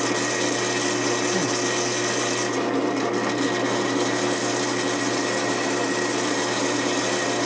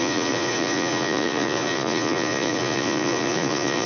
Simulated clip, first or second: second